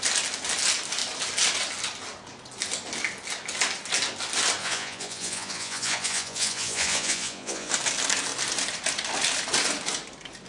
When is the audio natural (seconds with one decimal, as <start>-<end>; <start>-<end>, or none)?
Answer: 0.0-4.6; 7.7-10.5